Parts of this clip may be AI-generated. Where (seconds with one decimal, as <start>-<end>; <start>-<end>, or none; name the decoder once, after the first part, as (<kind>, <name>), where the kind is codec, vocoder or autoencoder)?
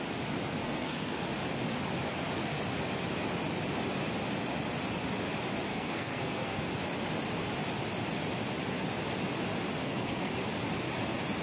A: 0.6-1.2 (codec, SNAC); 5.7-6.6; 9.8-10.3